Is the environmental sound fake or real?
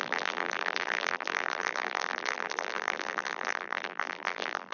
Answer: fake